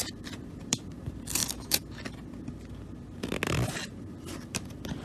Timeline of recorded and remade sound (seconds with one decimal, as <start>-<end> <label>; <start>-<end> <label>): 0.0-1.4 remade; 1.4-4.1 recorded; 4.1-5.0 remade